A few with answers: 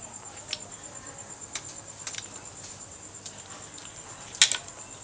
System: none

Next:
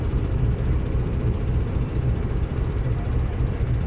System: none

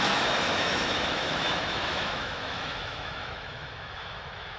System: autoencoder, DAC-VAE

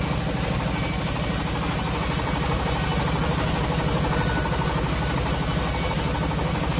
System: none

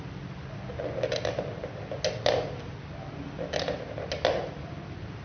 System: none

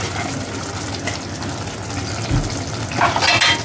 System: none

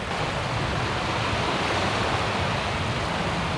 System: none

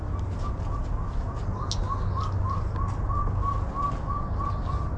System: none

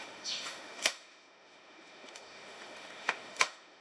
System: autoencoder, DAC-VAE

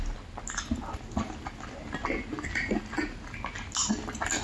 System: none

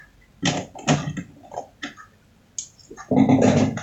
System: none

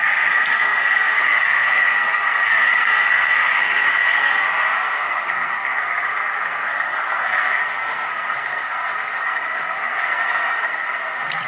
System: codec, SNAC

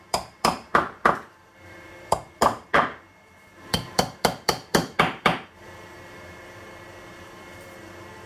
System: vocoder, BigVGAN v2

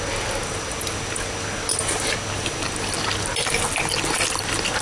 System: none